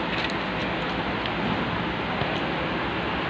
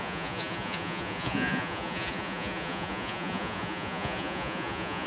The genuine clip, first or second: first